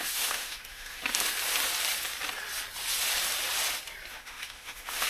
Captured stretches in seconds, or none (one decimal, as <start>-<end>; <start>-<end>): 1.0-4.1